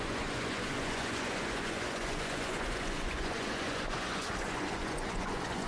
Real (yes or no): no